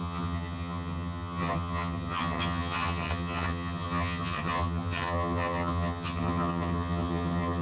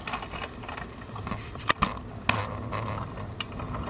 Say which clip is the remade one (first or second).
first